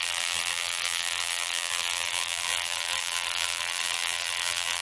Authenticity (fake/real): fake